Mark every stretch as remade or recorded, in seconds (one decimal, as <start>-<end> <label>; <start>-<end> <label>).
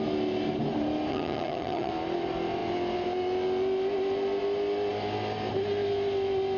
0.0-1.1 recorded; 1.1-1.9 remade; 1.9-6.6 recorded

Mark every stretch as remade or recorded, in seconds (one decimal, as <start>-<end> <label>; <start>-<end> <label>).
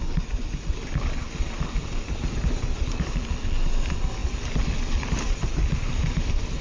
0.0-6.6 recorded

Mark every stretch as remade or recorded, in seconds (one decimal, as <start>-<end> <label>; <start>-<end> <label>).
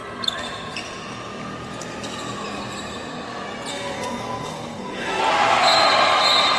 0.0-3.7 recorded; 3.7-5.2 remade; 5.2-6.6 recorded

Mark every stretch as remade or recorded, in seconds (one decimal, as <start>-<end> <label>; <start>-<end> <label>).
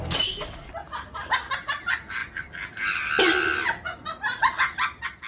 0.0-0.7 remade; 0.7-5.3 recorded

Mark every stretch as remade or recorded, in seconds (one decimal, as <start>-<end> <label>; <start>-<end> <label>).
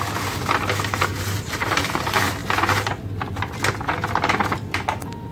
0.0-1.1 recorded; 1.1-1.8 remade; 1.8-5.3 recorded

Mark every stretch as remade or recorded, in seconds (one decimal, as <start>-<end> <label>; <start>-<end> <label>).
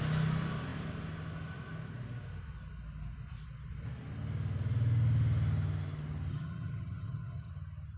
0.0-6.3 recorded; 6.3-7.5 remade; 7.5-8.0 recorded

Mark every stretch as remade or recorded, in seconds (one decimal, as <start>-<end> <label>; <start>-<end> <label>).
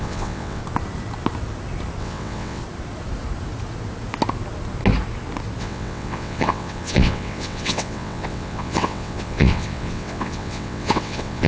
0.0-0.6 remade; 0.6-2.0 recorded; 2.0-2.6 remade; 2.6-5.6 recorded; 5.6-11.5 remade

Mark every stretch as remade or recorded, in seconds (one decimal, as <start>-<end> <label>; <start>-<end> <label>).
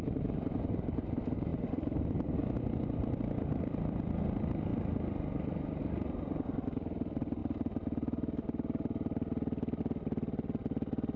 0.0-11.2 recorded